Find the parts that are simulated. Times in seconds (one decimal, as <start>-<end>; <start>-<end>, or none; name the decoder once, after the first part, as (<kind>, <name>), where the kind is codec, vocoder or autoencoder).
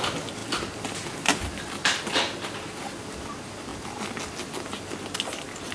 none